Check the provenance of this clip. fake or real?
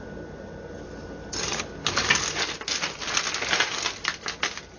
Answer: real